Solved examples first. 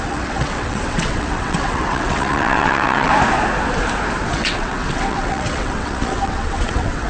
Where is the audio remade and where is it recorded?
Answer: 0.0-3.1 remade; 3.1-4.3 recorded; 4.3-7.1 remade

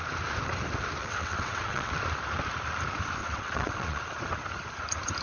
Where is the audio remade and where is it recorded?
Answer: 0.0-1.0 recorded; 1.0-2.0 remade; 2.0-3.2 recorded; 3.2-4.0 remade; 4.0-5.2 recorded

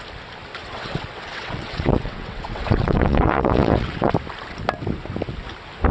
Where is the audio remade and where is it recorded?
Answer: 0.0-0.6 recorded; 0.6-4.1 remade; 4.1-5.9 recorded

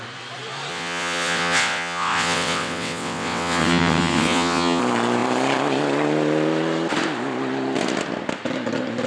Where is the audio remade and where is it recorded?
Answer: 0.0-0.7 recorded; 0.7-4.8 remade; 4.8-9.1 recorded